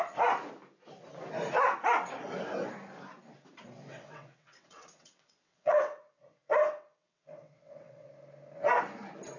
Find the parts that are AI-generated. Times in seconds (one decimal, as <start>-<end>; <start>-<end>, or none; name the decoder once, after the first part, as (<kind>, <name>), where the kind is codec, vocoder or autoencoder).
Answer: 3.9-8.1 (vocoder, WaveNeXt)

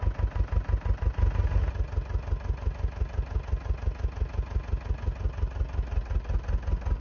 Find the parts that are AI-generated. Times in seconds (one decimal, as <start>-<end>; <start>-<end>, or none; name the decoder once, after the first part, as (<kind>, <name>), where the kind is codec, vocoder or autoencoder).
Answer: none

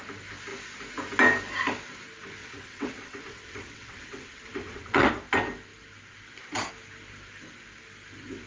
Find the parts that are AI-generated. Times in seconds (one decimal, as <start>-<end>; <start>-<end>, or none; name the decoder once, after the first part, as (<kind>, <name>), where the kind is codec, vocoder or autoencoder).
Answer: 2.4-5.1 (vocoder, WaveNeXt)

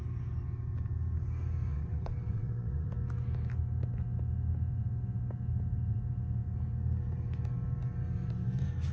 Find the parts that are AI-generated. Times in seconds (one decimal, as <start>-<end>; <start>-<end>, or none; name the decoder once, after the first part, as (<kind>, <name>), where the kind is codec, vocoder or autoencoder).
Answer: 1.7-2.9 (vocoder, WaveNeXt)

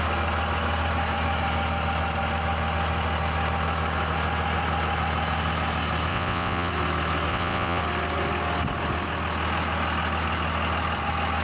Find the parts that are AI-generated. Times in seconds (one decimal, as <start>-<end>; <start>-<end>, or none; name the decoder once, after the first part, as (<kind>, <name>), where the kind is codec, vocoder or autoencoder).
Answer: 6.1-6.7 (vocoder, WaveNeXt); 7.3-7.8

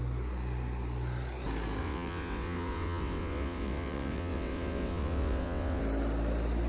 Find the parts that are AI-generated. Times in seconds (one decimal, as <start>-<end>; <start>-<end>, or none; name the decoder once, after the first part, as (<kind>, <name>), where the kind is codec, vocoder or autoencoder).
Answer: 1.8-5.8 (vocoder, WaveNeXt)

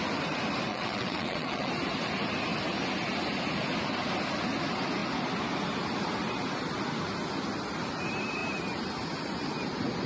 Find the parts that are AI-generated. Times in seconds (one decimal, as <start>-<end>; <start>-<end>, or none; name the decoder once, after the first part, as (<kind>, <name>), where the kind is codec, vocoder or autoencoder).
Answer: 0.7-1.7 (vocoder, WaveNeXt)

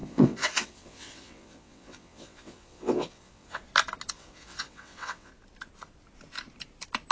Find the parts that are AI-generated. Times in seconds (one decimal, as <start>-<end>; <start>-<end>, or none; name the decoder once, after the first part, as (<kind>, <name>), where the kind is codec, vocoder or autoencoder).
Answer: 0.0-3.6 (vocoder, WaveNeXt); 4.1-5.3